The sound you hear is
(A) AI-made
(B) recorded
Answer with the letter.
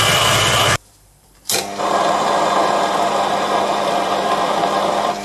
A